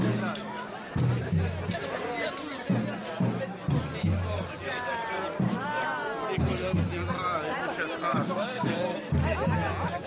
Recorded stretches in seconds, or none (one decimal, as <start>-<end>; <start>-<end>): 0.0-8.1; 8.7-10.1